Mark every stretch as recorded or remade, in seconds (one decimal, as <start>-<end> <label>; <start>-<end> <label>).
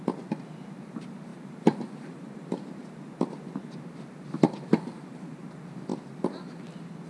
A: 0.0-1.3 recorded; 1.3-3.1 remade; 3.1-4.7 recorded; 4.7-5.4 remade; 5.4-7.1 recorded